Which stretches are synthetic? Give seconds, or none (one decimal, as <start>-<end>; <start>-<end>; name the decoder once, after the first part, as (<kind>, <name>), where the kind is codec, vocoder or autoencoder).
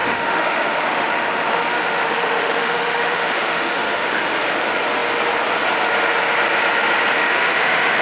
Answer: 0.0-4.2 (autoencoder, DAC-VAE); 7.2-8.0